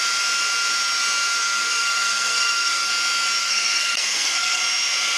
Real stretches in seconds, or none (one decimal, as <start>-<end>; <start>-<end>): 0.0-1.4; 2.9-3.4; 4.6-5.2